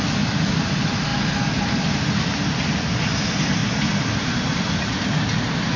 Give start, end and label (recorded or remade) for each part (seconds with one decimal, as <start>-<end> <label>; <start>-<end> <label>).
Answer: 0.0-5.8 recorded